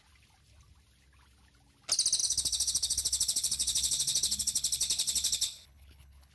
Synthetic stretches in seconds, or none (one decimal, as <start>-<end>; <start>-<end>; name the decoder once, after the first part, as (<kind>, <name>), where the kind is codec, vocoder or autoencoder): 2.2-6.3 (codec, HILCodec)